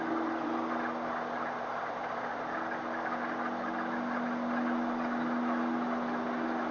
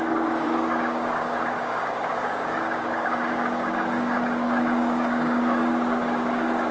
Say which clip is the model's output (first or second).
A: second